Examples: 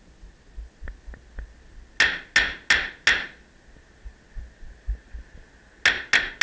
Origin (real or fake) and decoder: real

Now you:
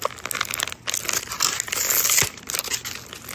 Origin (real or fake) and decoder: real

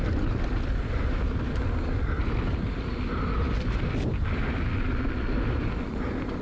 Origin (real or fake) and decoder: real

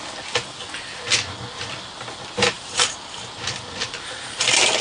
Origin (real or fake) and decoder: real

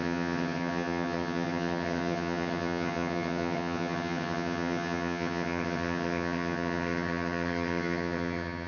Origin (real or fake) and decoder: fake, vocoder, HiFi-GAN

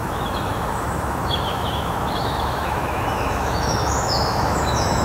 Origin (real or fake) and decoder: fake, autoencoder, DAC-VAE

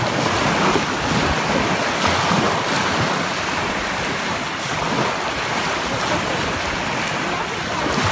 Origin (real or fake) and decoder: real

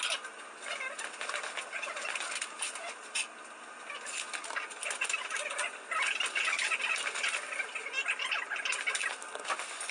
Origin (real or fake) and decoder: real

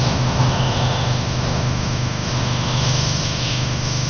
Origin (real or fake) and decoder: fake, autoencoder, DAC-VAE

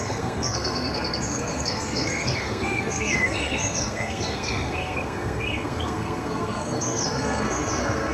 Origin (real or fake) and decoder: fake, codec, SNAC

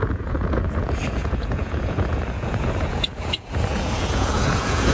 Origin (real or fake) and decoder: fake, vocoder, Vocos